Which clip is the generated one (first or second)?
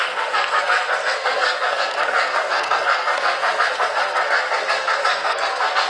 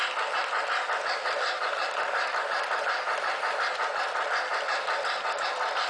first